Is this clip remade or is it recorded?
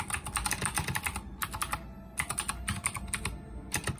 recorded